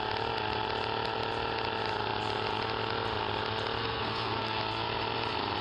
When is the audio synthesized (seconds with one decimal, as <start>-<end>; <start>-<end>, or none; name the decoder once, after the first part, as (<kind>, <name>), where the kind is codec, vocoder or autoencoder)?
3.8-4.6 (codec, SNAC)